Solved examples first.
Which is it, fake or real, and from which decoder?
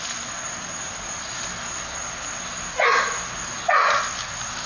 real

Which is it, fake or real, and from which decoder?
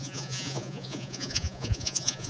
fake, vocoder, Vocos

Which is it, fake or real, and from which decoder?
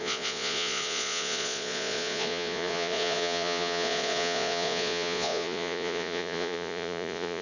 fake, vocoder, Vocos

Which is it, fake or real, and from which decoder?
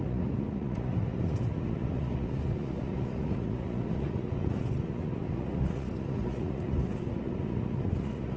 fake, vocoder, Vocos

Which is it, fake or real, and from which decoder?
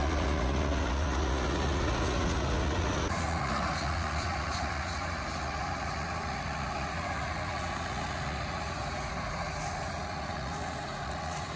fake, vocoder, Vocos